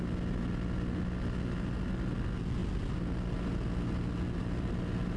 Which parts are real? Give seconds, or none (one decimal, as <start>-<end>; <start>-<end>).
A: 0.0-5.2